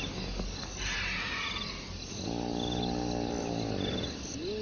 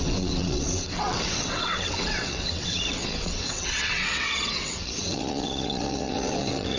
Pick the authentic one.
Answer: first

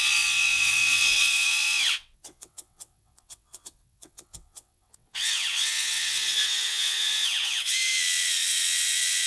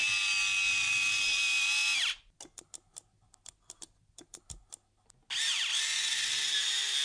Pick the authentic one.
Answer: second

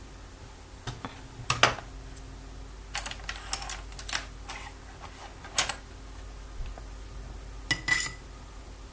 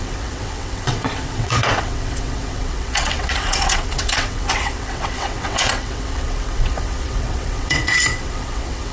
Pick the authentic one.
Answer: first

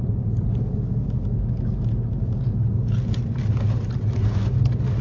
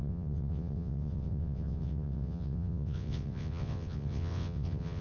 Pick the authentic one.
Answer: first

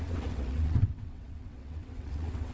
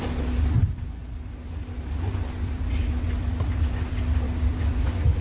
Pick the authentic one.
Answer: second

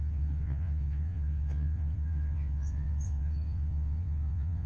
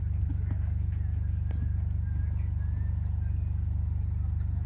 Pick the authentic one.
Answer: second